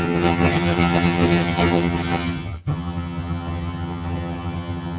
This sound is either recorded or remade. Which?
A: remade